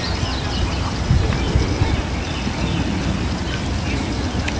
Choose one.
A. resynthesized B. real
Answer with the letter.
B